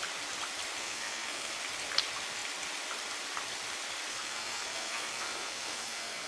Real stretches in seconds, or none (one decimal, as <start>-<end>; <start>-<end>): 0.0-0.8; 1.6-4.1